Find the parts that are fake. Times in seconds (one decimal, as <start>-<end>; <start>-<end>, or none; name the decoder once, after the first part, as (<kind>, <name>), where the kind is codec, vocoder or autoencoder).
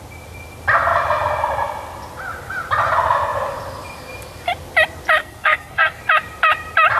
5.2-6.0 (codec, SNAC)